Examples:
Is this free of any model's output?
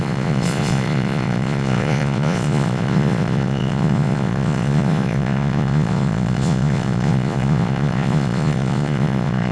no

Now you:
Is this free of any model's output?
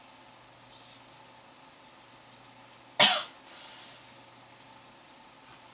yes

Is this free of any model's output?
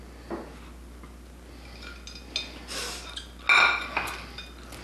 yes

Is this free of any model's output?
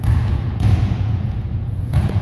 no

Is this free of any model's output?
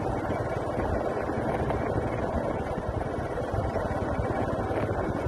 yes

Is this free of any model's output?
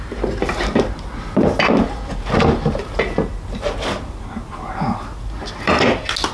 yes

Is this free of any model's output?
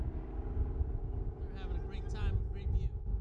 yes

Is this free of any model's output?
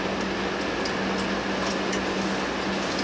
yes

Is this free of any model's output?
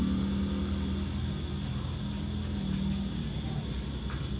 yes